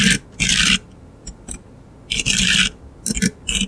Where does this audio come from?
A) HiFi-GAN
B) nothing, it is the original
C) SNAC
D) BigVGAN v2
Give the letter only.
B